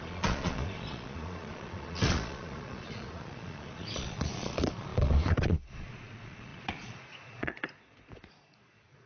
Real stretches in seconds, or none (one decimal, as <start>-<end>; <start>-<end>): none